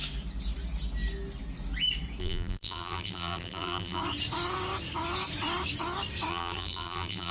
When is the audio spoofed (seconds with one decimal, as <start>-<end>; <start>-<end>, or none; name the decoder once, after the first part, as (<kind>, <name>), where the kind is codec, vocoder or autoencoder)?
2.2-4.0 (vocoder, BigVGAN v2); 6.3-7.3